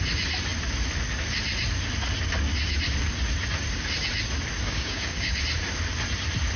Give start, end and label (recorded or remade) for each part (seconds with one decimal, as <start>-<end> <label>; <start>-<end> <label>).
0.0-4.6 recorded; 4.6-5.4 remade; 5.4-6.6 recorded